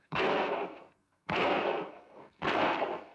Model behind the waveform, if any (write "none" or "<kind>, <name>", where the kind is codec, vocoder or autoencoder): codec, SNAC